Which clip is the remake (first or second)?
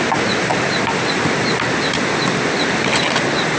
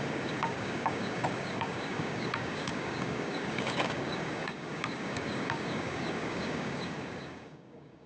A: second